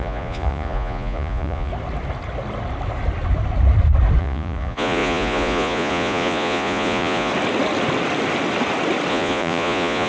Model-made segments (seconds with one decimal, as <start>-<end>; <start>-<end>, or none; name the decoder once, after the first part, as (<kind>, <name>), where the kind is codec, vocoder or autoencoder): 0.0-1.7 (vocoder, Vocos); 4.2-7.3; 9.1-10.1